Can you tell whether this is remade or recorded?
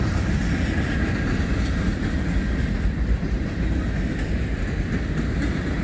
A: recorded